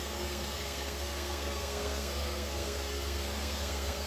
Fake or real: fake